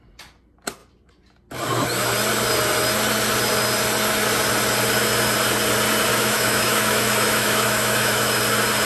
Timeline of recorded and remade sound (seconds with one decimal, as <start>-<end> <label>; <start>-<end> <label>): 0.0-6.1 recorded; 6.1-8.4 remade; 8.4-8.9 recorded

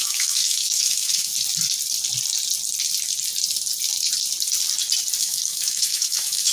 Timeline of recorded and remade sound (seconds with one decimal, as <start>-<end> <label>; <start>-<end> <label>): 0.0-1.3 remade; 1.3-5.2 recorded; 5.2-6.5 remade

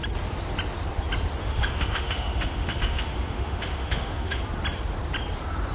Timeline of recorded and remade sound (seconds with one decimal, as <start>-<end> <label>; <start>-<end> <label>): 0.0-1.4 recorded; 1.4-4.4 remade; 4.4-5.7 recorded

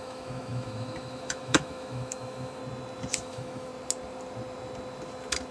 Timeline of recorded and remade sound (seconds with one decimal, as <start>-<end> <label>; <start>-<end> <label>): 0.0-2.6 remade; 2.6-3.1 recorded; 3.1-3.7 remade; 3.7-5.5 recorded

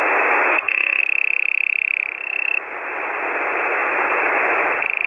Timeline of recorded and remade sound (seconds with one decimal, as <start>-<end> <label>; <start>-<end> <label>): 0.0-0.5 recorded; 0.5-1.0 remade; 1.0-5.1 recorded